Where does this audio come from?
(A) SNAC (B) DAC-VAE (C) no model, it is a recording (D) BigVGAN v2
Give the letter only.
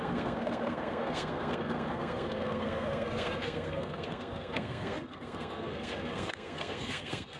A